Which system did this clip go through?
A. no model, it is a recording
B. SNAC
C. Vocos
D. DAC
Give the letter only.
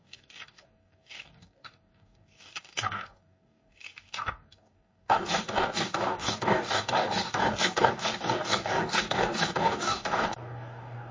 D